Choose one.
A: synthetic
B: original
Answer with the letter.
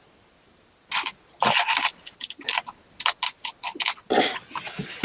B